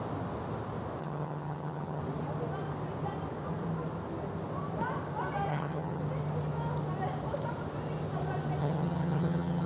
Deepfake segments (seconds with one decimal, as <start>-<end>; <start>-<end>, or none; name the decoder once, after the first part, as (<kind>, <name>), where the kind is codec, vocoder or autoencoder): 1.0-2.0 (vocoder, HiFi-GAN); 5.5-6.0; 8.6-9.7